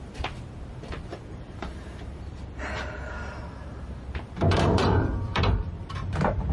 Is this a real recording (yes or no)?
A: no